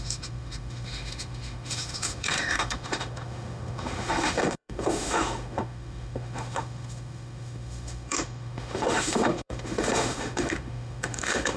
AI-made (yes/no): yes